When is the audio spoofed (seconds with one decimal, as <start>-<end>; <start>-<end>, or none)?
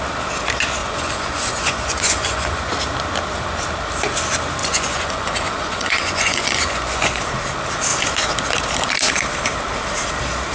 0.8-2.7; 4.6-7.2